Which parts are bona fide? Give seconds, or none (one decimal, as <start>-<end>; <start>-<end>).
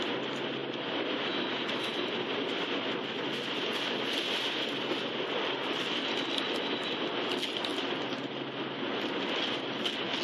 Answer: 0.0-10.2